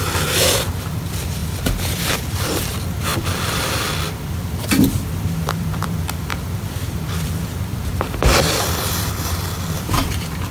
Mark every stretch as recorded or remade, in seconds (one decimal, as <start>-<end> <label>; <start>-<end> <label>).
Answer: 0.0-10.5 remade